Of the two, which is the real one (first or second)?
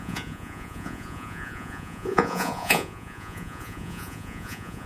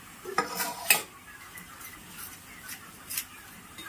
second